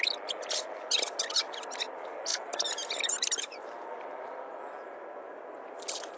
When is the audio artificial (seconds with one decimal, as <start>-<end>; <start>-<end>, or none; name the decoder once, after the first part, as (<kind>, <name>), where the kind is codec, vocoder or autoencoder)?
none